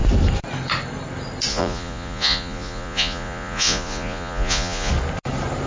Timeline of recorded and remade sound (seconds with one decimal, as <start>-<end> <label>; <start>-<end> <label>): 0.0-1.5 recorded; 1.5-4.9 remade; 4.9-5.7 recorded